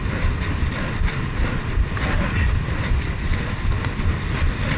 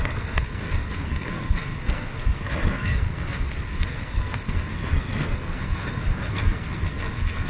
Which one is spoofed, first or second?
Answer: second